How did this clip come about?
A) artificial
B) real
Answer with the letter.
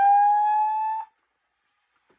B